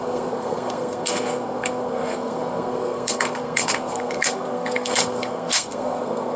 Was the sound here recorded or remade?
remade